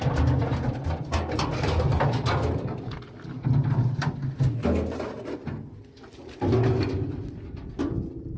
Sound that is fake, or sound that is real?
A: real